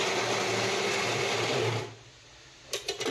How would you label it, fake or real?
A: real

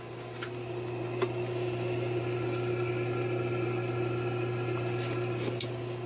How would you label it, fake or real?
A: real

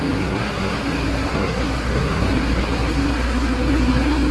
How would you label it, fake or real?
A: fake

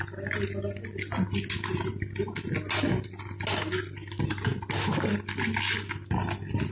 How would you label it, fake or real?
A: real